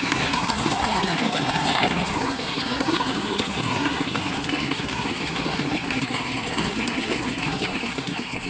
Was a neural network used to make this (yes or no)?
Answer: yes